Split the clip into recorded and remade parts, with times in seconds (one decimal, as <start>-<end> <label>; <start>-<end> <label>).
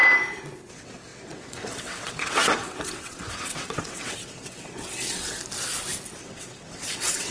0.0-0.7 recorded; 0.7-5.4 remade; 5.4-6.2 recorded; 6.2-7.3 remade